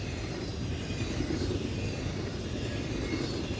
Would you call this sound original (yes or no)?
yes